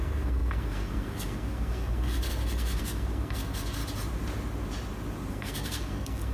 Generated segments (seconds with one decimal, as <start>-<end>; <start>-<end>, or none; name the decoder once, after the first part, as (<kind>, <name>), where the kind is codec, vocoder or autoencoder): 0.0-3.8 (codec, SNAC); 5.3-6.3